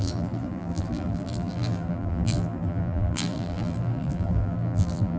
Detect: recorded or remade remade